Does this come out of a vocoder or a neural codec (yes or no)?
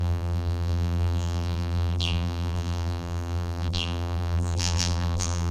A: yes